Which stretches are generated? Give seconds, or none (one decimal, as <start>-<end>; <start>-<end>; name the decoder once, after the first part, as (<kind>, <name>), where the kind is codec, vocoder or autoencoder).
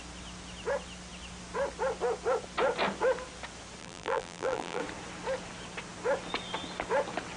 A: 3.8-4.8 (vocoder, BigVGAN v2)